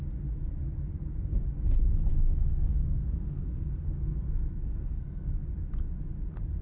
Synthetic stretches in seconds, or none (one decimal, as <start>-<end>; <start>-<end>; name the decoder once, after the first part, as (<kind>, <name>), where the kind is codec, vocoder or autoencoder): 2.1-5.3 (codec, SNAC)